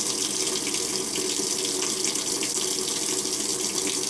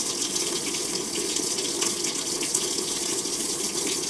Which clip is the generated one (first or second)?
second